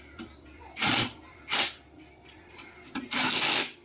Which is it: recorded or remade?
recorded